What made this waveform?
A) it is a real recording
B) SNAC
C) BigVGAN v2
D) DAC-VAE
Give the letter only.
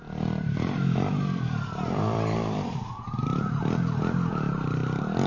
C